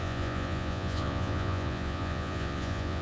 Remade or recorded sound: remade